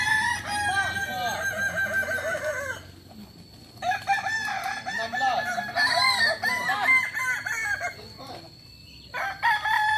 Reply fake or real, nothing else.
real